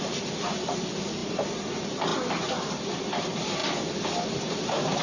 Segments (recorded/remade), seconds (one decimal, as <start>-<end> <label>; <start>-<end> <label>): 0.0-3.6 remade; 3.6-5.0 recorded